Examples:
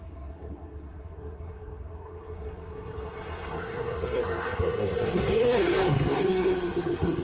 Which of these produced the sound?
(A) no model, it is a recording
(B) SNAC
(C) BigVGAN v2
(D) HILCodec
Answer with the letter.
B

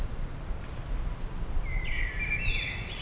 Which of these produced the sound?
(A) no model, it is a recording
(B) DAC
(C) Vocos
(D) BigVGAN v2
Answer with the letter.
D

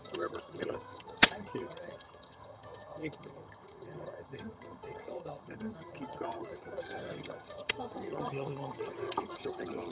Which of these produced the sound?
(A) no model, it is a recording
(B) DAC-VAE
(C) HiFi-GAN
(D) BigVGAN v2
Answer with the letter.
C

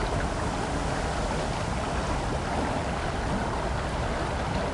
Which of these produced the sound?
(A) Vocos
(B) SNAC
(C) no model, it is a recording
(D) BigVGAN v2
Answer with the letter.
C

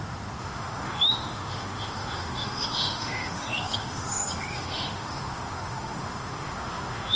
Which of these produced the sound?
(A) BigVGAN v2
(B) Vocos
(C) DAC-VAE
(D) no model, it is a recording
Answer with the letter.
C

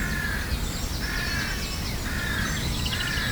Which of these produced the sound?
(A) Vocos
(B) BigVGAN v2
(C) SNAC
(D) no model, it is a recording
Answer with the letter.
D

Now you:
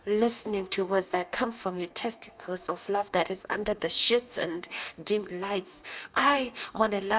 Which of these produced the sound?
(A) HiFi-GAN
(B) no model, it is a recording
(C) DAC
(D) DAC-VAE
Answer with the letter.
C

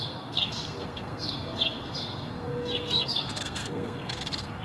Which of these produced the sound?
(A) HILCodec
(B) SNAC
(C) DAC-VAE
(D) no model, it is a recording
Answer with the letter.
B